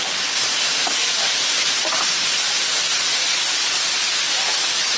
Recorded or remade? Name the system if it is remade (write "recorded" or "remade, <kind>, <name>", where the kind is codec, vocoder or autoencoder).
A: recorded